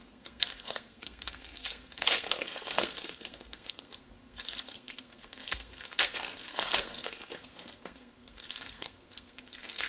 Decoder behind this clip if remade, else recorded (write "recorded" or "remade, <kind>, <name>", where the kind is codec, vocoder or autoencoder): remade, codec, SNAC